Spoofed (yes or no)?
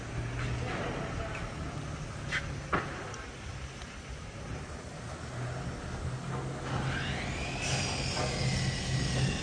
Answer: no